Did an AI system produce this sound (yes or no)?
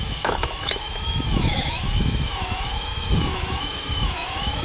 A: yes